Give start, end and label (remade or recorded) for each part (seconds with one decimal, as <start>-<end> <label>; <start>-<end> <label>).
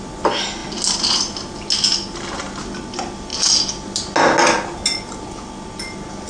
0.0-6.3 recorded